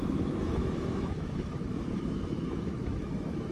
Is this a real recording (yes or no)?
no